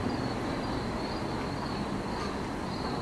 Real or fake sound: real